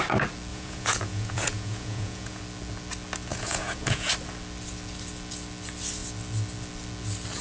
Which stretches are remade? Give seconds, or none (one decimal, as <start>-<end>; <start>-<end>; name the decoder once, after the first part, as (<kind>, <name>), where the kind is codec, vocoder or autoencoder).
0.5-2.4 (vocoder, Vocos); 3.3-4.1

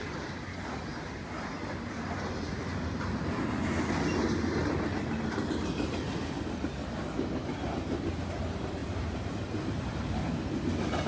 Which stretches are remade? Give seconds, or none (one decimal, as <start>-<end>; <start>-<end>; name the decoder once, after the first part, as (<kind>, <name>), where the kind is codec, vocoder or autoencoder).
1.6-3.4 (vocoder, BigVGAN v2); 7.4-8.2; 8.8-10.2

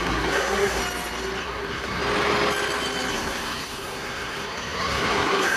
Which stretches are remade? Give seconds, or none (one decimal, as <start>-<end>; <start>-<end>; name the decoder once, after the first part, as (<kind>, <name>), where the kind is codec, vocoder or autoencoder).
0.0-0.8 (codec, SNAC); 1.4-2.0; 3.1-5.6

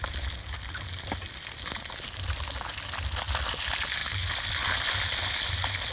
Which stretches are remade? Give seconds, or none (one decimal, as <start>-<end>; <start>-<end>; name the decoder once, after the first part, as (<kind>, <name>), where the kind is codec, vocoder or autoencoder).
none

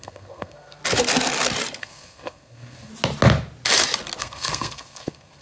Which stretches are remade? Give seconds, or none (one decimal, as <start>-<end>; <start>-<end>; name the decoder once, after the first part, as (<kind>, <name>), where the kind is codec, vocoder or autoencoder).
0.0-0.8 (codec, SNAC); 1.8-2.9; 4.2-5.4

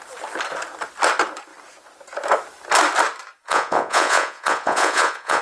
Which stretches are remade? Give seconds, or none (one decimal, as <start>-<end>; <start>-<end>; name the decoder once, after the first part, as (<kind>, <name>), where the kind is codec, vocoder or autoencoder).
3.4-5.4 (vocoder, Vocos)

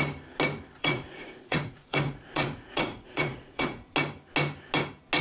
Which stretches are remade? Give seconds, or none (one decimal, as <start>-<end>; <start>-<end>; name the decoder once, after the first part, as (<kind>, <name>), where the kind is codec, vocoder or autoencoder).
0.8-3.9 (vocoder, Vocos)

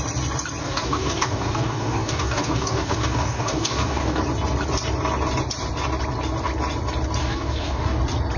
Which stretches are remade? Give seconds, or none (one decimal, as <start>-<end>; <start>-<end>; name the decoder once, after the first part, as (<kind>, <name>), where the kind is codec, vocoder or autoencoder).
0.6-4.2 (codec, DAC); 7.2-8.0